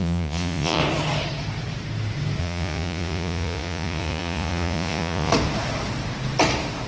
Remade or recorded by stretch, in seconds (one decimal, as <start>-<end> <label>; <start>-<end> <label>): 0.0-0.8 remade; 0.8-2.4 recorded; 2.4-5.3 remade; 5.3-6.9 recorded